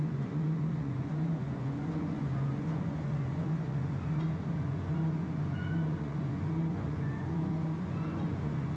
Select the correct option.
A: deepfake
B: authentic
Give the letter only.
A